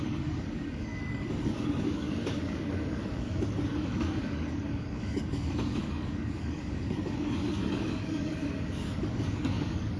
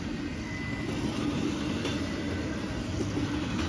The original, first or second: second